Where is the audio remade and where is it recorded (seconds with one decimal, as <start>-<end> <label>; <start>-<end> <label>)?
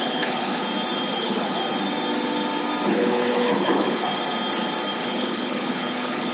0.0-0.6 remade; 0.6-1.2 recorded; 1.2-1.6 remade; 1.6-2.9 recorded; 2.9-4.1 remade; 4.1-5.0 recorded; 5.0-6.3 remade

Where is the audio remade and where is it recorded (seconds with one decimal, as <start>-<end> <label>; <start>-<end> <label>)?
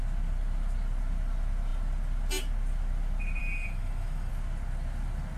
0.0-3.4 recorded; 3.4-4.3 remade; 4.3-5.4 recorded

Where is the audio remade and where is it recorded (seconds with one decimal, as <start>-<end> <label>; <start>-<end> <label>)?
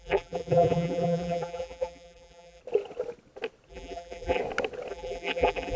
0.0-2.6 remade; 2.6-3.7 recorded; 3.7-4.4 remade; 4.4-4.9 recorded; 4.9-5.8 remade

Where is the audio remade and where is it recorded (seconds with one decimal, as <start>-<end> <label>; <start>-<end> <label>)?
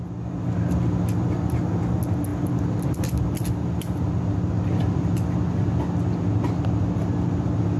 0.0-7.8 recorded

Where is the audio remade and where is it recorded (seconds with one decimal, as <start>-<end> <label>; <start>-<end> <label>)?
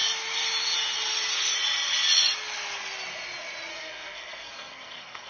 0.0-3.7 recorded; 3.7-5.3 remade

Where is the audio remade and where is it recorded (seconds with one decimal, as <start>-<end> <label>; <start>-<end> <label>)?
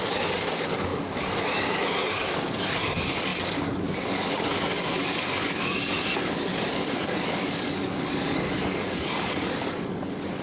0.0-10.4 remade